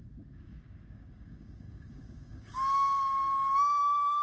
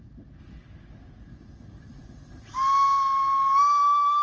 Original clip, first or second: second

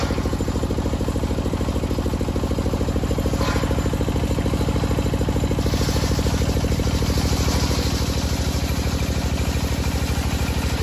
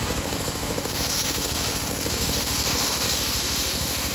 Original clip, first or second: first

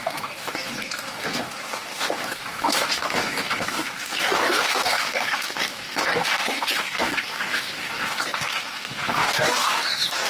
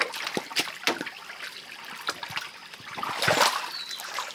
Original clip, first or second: second